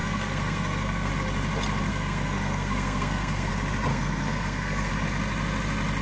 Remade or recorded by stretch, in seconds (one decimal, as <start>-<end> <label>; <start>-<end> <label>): 0.0-1.1 remade; 1.1-1.9 recorded; 1.9-3.5 remade; 3.5-3.9 recorded; 3.9-4.9 remade; 4.9-6.0 recorded